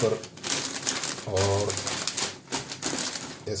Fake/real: real